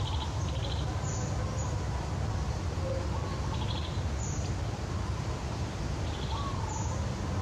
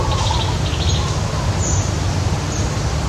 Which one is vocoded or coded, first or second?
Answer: first